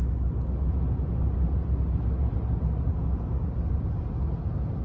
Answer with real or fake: real